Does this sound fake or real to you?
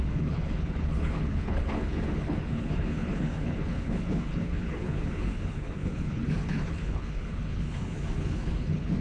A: fake